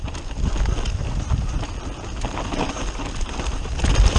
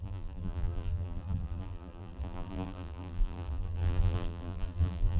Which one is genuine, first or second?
first